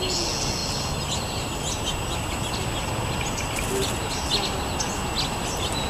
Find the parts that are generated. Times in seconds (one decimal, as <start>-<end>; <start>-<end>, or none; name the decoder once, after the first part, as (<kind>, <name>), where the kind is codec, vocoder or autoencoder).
none